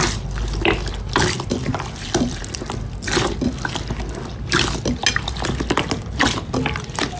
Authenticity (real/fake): real